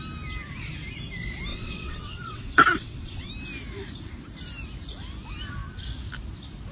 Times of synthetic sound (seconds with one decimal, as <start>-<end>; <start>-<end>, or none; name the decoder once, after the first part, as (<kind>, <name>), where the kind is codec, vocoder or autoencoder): 1.5-3.3 (vocoder, WaveNeXt)